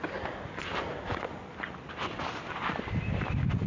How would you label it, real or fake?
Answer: real